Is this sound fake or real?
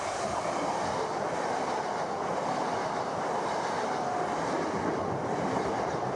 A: real